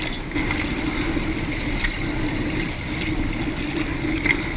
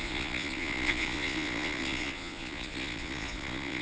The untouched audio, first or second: first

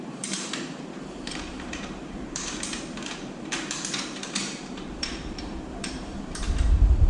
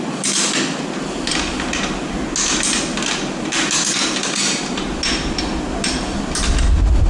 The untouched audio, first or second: second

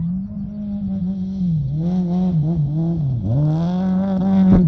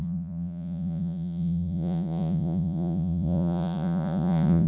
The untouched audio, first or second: first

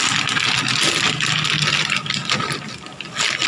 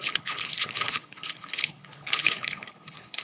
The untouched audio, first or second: first